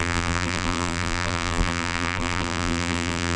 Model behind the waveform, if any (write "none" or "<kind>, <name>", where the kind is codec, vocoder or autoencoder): vocoder, BigVGAN v2